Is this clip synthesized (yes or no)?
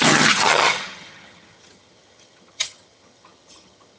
yes